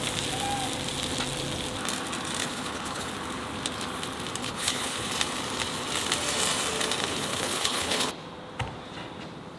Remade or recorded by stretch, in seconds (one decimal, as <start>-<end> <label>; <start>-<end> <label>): 0.0-2.4 recorded; 2.4-3.1 remade; 3.1-4.4 recorded; 4.4-5.1 remade; 5.1-7.0 recorded; 7.0-8.1 remade; 8.1-9.6 recorded